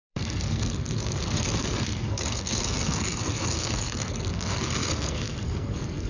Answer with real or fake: fake